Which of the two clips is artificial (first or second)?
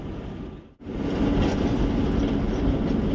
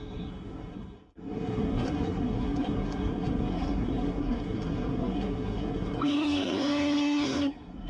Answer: second